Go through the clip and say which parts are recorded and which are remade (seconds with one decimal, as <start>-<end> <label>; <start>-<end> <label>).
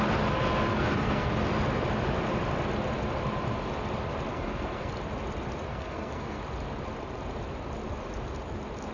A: 0.0-0.7 recorded; 0.7-1.3 remade; 1.3-4.3 recorded; 4.3-4.9 remade; 4.9-5.7 recorded; 5.7-6.4 remade; 6.4-8.9 recorded